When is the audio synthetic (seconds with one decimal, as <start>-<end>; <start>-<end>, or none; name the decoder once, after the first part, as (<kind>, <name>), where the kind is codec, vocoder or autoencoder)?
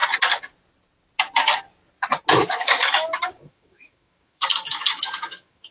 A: 2.3-5.7 (autoencoder, DAC-VAE)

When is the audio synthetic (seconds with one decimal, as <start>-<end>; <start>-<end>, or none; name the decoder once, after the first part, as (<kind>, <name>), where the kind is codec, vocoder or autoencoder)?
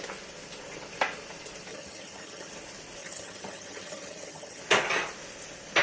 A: 1.7-2.5 (vocoder, HiFi-GAN); 3.0-4.6